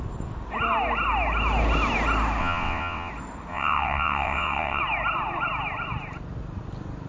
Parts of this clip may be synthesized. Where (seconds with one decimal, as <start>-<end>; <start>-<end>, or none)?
2.4-3.1; 3.5-4.8